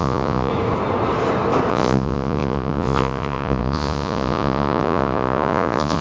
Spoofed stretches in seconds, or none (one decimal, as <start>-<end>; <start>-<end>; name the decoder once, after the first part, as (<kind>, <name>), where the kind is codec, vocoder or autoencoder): 0.0-0.5 (vocoder, Vocos); 1.7-6.0